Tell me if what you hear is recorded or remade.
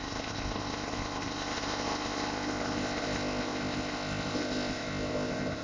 remade